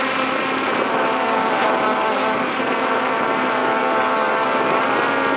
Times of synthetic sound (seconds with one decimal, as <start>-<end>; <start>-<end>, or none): 1.2-2.6; 3.6-4.8